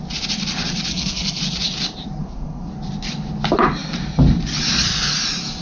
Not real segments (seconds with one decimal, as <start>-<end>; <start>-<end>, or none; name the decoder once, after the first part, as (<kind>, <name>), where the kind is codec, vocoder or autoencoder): 0.9-1.4 (codec, SNAC); 2.2-2.7